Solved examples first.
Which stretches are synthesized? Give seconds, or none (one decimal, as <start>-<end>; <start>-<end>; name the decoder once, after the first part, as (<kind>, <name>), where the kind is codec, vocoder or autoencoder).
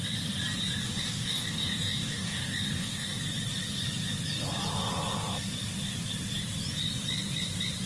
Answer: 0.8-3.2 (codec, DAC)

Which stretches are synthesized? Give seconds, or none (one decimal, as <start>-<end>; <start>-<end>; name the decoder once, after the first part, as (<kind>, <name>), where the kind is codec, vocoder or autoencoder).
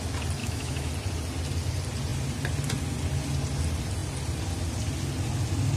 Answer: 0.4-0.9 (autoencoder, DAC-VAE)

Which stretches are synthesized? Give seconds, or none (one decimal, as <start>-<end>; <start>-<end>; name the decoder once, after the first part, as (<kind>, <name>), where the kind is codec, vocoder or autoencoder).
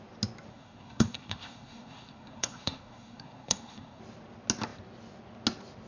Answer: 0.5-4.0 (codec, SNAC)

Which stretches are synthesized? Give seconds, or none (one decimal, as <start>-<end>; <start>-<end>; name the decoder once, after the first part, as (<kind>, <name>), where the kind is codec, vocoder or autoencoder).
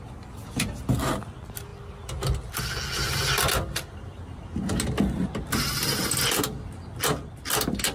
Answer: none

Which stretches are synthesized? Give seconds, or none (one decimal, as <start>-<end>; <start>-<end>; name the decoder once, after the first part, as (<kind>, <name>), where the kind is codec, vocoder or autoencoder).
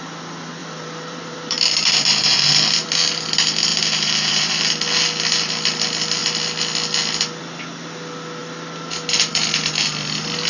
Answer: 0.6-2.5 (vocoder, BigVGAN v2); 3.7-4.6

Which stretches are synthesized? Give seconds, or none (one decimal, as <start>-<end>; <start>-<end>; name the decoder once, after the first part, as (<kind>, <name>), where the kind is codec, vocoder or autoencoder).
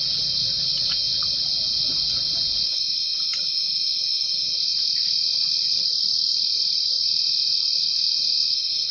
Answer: none